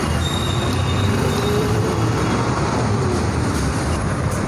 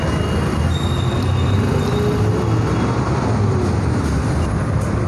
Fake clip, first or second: first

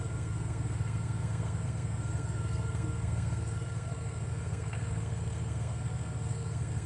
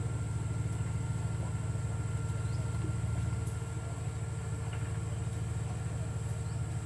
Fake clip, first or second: first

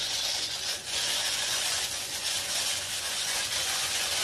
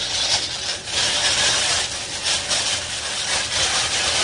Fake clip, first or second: first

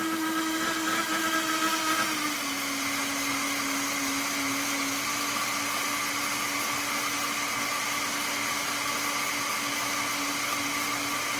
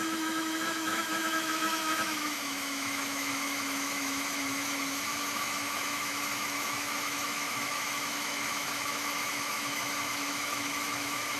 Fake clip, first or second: second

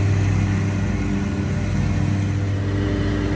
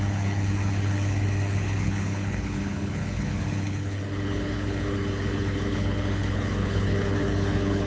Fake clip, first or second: second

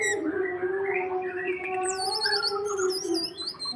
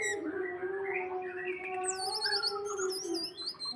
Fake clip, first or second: first